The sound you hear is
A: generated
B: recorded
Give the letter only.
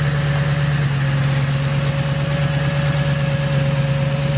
B